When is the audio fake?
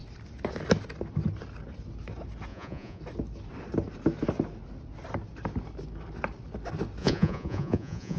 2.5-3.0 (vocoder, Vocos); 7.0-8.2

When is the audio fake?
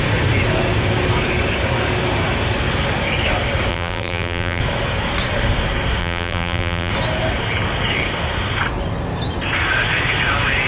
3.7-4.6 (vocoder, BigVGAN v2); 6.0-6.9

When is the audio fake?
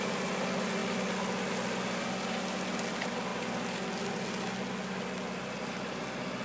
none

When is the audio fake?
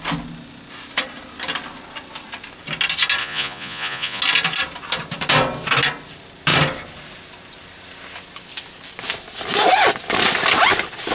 3.2-4.2 (vocoder, Vocos)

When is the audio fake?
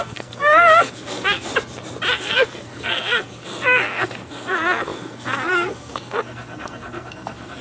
0.0-1.5 (codec, SNAC); 2.1-7.6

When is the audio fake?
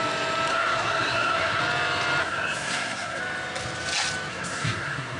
0.5-1.6 (codec, SNAC); 2.2-3.2; 4.3-5.2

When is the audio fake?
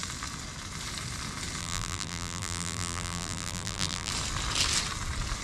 1.6-4.1 (vocoder, BigVGAN v2)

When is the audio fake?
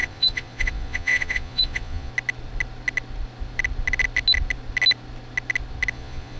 0.0-2.1 (vocoder, Vocos); 5.9-6.4